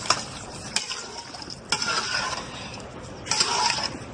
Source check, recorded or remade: recorded